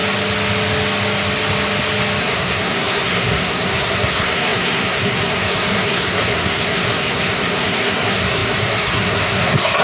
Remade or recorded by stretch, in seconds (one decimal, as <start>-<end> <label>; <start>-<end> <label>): 0.0-2.2 recorded; 2.2-9.8 remade